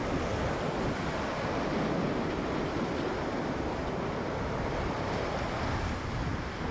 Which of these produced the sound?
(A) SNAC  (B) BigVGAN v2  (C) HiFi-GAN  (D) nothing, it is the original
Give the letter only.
D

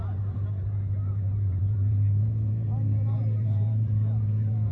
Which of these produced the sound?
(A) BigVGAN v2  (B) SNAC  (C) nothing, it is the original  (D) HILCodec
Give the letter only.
A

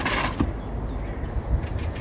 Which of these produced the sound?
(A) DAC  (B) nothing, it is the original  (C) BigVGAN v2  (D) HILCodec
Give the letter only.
B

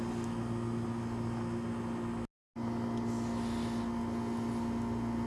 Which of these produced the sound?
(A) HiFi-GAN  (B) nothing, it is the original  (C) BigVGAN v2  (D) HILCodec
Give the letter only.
B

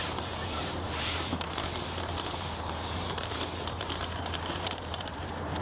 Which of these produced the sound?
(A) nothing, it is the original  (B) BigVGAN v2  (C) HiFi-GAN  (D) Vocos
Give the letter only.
B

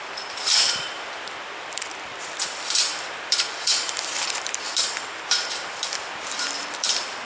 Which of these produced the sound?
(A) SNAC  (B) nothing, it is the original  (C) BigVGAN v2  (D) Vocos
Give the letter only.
C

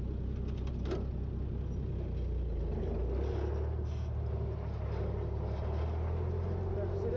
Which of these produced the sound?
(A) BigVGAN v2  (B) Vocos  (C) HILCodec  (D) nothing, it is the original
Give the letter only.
D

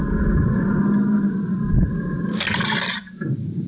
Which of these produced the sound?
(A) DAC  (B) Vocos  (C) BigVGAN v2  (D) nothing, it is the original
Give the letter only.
D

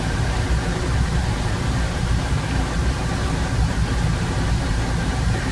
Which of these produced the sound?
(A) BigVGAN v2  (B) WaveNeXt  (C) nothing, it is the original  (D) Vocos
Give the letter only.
A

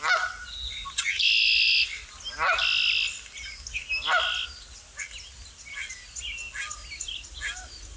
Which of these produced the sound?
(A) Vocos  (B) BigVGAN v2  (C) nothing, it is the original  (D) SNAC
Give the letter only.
C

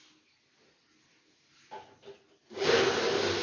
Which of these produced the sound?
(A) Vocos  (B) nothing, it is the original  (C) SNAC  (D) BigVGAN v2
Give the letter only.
B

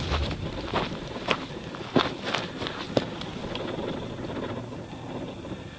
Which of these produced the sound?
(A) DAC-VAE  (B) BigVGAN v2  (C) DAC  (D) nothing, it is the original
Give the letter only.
D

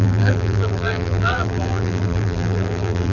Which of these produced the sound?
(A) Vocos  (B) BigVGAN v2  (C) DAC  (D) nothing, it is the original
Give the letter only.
B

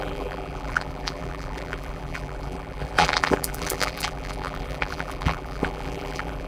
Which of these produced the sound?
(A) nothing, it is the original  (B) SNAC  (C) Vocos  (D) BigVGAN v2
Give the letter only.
D